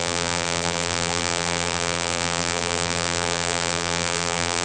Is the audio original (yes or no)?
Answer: no